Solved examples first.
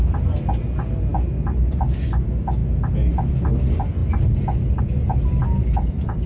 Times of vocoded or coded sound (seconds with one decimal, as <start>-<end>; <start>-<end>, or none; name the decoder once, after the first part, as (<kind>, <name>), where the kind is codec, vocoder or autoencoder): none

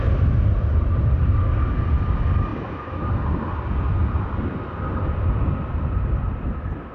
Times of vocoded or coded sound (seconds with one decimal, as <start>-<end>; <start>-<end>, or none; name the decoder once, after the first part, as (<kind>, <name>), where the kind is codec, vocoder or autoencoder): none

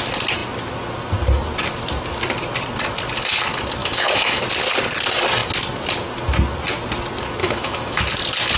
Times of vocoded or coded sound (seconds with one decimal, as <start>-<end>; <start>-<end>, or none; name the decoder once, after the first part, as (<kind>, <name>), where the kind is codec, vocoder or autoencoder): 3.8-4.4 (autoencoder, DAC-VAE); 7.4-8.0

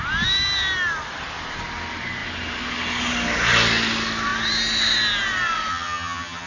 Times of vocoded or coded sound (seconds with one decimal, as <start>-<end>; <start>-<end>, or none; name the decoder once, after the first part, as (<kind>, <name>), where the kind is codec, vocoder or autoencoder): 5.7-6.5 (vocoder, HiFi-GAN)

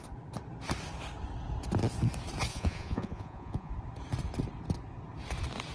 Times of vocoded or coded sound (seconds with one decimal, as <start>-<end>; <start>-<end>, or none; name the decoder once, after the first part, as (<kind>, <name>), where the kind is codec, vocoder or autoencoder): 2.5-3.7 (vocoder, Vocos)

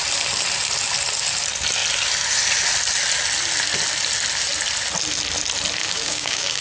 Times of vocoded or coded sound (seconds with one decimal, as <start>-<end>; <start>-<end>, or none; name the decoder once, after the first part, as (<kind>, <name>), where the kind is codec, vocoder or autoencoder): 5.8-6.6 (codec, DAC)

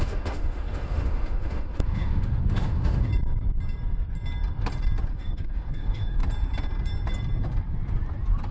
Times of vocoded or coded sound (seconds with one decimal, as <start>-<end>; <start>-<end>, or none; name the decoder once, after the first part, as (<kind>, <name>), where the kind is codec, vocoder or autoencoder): 0.0-3.1 (autoencoder, DAC-VAE); 5.1-6.2

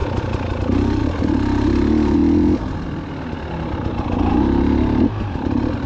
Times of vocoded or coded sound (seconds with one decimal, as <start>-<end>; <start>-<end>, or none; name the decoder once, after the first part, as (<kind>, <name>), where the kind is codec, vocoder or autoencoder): none